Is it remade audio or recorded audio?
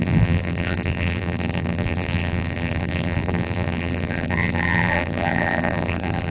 remade